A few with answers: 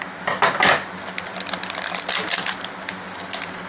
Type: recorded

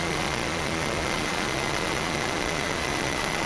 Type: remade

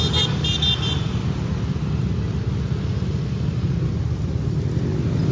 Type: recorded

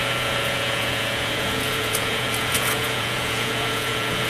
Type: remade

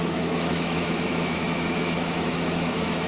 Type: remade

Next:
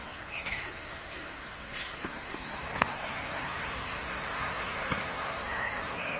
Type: remade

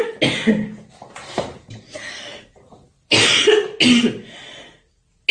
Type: recorded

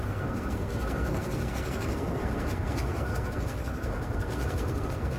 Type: remade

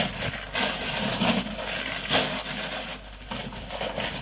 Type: recorded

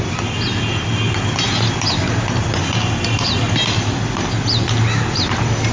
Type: recorded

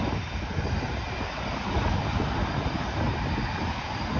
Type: recorded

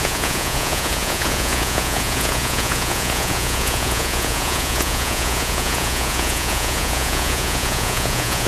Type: remade